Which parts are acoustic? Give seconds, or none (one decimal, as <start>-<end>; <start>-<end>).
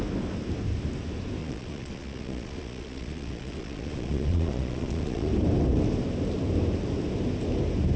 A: 0.0-1.4; 5.3-8.0